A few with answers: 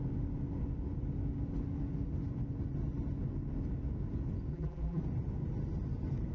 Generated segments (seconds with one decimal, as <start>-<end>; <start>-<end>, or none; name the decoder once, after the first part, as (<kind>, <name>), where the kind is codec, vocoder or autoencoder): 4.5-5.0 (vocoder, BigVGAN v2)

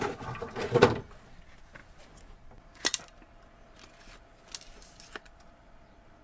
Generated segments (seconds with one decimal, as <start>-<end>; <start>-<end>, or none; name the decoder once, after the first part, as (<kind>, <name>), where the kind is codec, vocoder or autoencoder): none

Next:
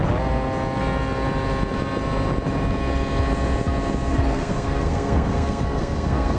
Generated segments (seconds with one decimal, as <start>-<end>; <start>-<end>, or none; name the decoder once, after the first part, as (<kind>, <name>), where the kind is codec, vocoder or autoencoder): 4.1-6.4 (codec, SNAC)

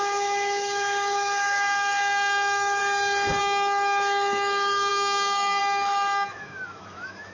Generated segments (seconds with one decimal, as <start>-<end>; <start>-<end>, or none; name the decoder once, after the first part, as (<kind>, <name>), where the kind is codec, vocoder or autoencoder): 0.0-2.8 (autoencoder, DAC-VAE); 3.4-7.3

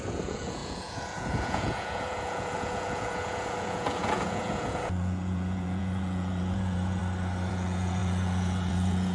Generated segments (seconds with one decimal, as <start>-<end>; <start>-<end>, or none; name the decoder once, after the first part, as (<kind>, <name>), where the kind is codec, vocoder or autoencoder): 0.0-7.0 (vocoder, Vocos); 7.5-9.1

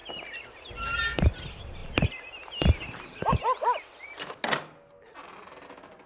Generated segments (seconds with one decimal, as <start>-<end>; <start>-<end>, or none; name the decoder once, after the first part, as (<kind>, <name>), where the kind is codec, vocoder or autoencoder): none

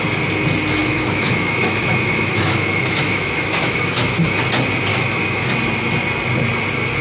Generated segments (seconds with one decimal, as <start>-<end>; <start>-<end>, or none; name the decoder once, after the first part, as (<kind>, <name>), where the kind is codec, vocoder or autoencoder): 0.8-4.4 (autoencoder, DAC-VAE); 4.9-5.5